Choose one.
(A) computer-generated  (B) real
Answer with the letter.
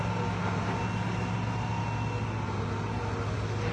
B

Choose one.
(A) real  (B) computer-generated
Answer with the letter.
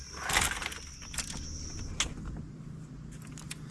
A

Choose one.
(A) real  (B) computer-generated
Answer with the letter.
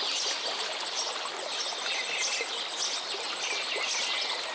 A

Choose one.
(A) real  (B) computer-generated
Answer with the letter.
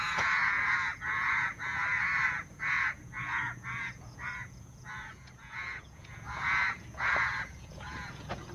B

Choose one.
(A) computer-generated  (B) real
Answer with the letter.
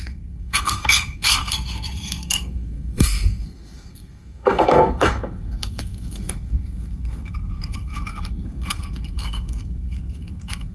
A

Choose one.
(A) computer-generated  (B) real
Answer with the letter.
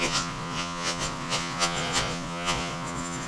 A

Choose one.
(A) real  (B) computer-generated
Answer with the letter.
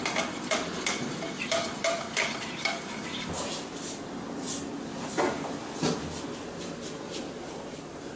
A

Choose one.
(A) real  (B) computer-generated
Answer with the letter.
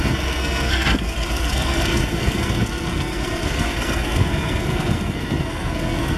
B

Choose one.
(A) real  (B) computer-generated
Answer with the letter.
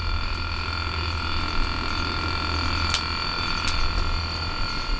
A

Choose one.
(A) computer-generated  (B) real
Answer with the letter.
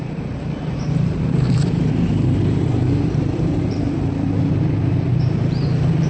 A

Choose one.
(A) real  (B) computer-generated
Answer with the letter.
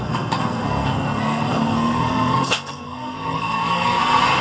B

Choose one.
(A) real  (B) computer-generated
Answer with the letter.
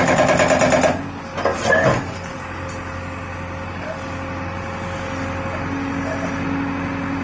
A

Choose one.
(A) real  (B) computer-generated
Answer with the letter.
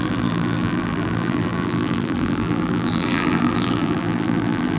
B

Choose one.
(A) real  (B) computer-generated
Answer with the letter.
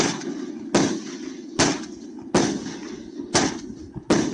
A